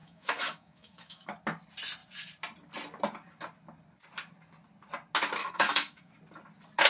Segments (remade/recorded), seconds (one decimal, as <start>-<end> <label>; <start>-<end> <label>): 0.0-1.3 remade; 1.3-5.4 recorded; 5.4-6.1 remade; 6.1-6.9 recorded